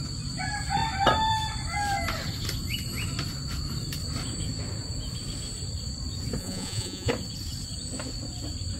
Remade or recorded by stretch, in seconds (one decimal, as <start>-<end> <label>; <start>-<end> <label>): 0.0-6.4 recorded; 6.4-7.1 remade; 7.1-8.8 recorded